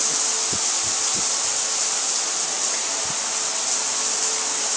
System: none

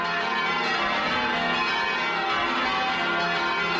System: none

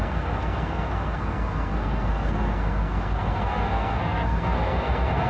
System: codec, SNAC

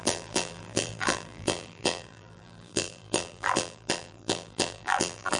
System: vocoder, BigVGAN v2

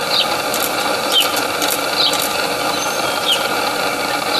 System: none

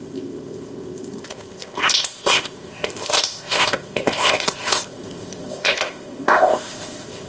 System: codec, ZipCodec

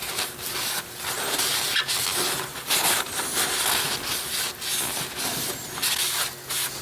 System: none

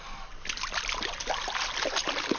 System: none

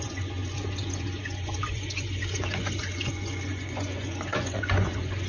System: vocoder, Vocos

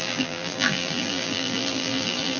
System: vocoder, BigVGAN v2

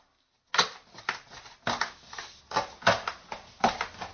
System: none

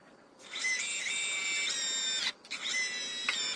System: none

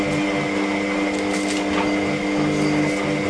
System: none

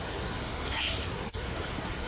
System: codec, SNAC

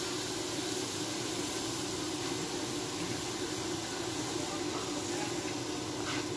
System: none